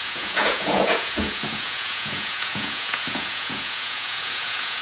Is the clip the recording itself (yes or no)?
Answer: no